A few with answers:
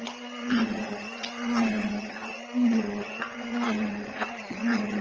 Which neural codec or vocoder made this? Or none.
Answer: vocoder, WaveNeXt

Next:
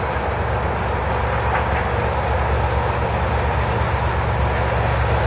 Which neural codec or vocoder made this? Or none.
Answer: none